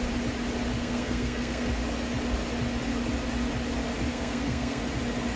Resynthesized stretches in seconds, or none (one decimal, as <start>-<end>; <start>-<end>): 0.8-1.7; 4.1-4.8